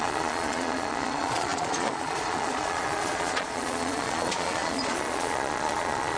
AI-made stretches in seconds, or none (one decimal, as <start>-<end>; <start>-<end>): 0.0-6.2